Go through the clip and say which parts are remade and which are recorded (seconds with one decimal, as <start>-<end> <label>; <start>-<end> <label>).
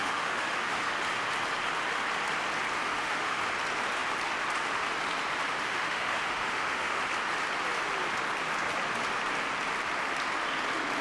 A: 0.0-1.0 remade; 1.0-2.8 recorded; 2.8-3.4 remade; 3.4-5.6 recorded; 5.6-7.0 remade; 7.0-11.0 recorded